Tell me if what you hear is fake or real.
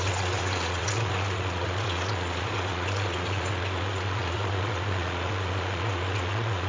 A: fake